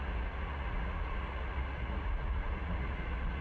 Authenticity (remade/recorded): remade